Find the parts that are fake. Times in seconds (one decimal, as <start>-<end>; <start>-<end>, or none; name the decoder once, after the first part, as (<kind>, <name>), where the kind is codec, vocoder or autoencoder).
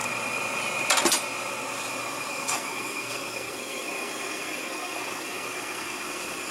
2.3-6.5 (codec, SNAC)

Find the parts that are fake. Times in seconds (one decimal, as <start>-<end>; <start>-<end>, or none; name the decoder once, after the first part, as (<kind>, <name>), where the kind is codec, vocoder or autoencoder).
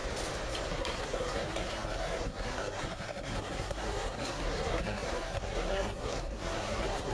0.7-7.1 (codec, SNAC)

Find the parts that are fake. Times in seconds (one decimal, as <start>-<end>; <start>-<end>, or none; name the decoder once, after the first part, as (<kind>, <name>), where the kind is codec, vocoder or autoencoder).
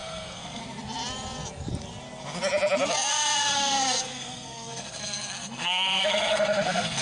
0.0-0.6 (codec, SNAC); 3.1-7.0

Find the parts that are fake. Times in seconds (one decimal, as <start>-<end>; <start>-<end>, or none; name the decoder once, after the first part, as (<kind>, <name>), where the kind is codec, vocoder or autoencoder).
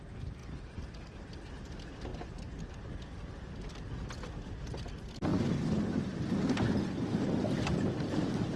none